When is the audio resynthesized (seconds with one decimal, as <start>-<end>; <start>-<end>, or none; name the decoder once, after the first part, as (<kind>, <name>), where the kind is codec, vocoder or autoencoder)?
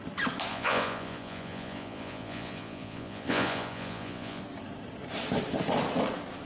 0.5-4.4 (vocoder, Vocos)